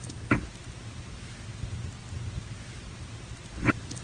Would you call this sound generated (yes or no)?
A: no